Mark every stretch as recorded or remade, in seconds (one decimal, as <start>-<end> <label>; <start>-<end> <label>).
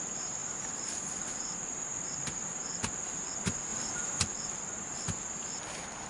0.0-6.1 recorded